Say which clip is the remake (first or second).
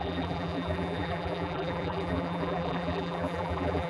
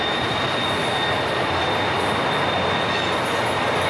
first